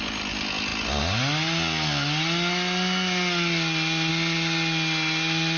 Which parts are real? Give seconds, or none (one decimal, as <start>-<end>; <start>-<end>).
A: 0.0-5.6